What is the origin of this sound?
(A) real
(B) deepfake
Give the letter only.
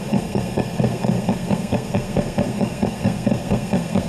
B